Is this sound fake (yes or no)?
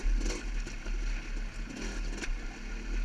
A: no